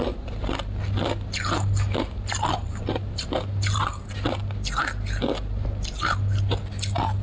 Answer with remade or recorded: recorded